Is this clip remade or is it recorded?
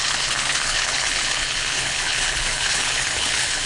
remade